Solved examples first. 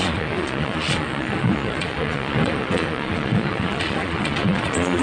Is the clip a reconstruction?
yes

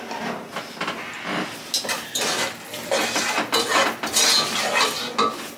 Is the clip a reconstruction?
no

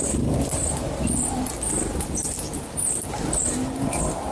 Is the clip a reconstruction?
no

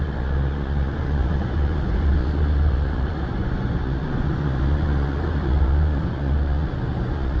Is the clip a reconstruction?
yes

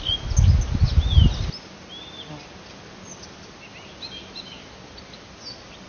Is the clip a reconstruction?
no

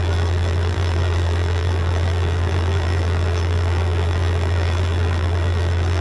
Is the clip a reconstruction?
yes